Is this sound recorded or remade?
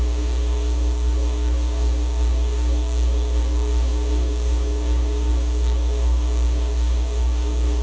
remade